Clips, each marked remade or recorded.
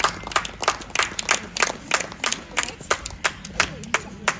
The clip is recorded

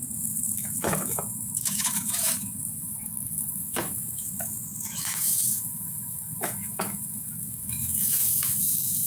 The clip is remade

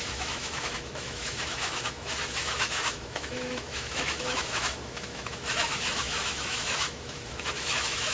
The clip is remade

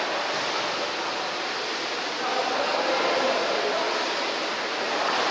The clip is recorded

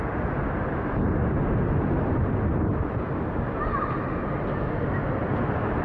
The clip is recorded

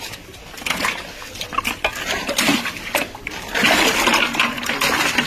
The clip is recorded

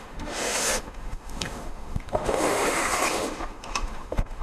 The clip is remade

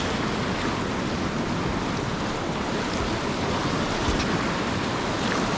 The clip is recorded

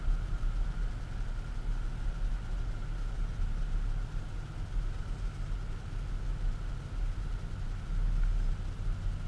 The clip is recorded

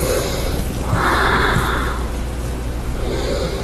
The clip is recorded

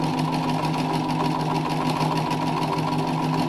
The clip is recorded